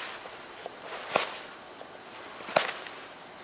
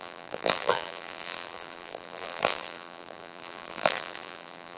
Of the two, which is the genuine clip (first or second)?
first